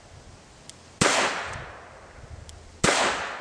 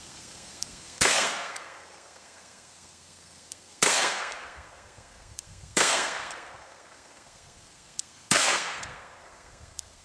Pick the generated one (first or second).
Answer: second